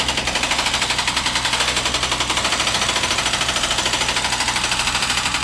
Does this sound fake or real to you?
real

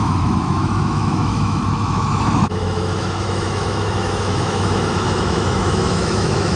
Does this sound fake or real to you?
fake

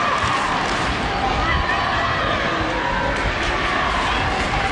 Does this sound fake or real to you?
real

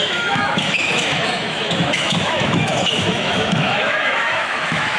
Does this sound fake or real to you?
fake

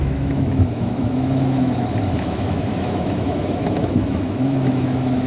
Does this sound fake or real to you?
fake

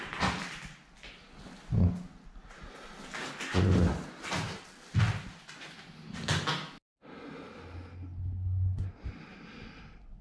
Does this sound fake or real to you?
real